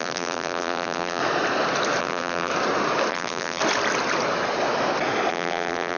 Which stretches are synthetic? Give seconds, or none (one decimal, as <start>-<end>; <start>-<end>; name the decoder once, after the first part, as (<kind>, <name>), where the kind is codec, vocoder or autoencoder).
0.0-1.2 (vocoder, BigVGAN v2); 2.0-2.5; 3.1-3.6; 5.3-6.0